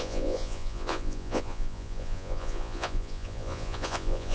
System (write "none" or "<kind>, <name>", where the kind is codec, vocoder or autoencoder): vocoder, Vocos